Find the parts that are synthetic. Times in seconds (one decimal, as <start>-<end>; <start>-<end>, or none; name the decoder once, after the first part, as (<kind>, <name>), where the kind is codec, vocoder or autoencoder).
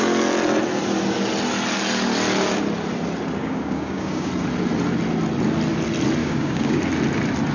3.4-4.3 (codec, DAC); 6.2-6.8